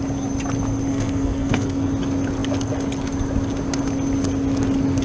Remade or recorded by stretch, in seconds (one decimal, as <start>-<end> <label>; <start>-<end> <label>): 0.0-0.9 recorded; 0.9-1.9 remade; 1.9-5.0 recorded